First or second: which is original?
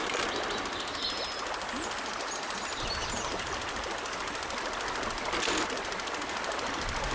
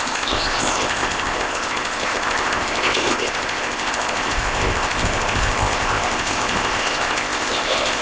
first